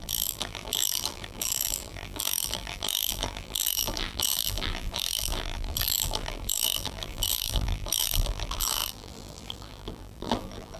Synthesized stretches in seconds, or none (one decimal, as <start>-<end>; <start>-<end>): 0.0-10.8